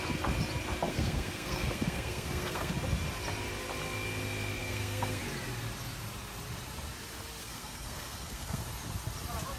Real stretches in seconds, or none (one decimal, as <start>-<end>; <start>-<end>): 0.0-0.9; 2.7-4.6; 5.2-7.4; 8.6-9.6